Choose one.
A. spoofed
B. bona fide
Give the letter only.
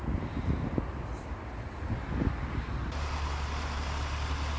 B